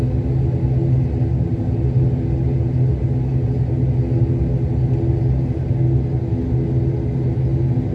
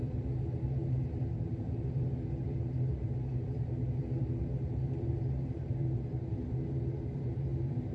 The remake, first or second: second